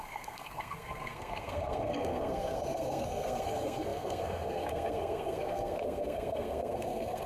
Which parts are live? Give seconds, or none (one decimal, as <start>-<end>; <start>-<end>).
none